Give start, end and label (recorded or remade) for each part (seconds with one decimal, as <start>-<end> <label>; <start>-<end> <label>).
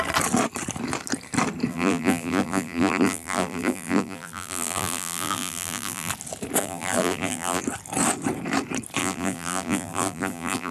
0.0-1.7 recorded; 1.7-6.1 remade; 6.1-6.6 recorded; 6.6-7.6 remade; 7.6-9.0 recorded; 9.0-10.7 remade